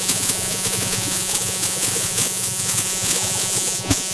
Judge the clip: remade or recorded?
remade